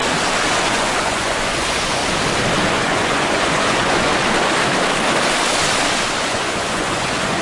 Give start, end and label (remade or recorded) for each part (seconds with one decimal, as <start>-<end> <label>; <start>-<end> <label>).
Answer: 0.0-0.6 recorded; 0.6-2.0 remade; 2.0-2.7 recorded; 2.7-4.1 remade; 4.1-6.2 recorded; 6.2-7.4 remade